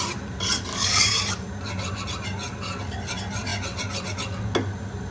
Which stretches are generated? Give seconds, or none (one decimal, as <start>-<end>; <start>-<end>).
0.7-1.2